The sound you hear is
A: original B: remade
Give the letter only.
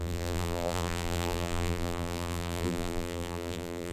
B